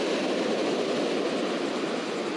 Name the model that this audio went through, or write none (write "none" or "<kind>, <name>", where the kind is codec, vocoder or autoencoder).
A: none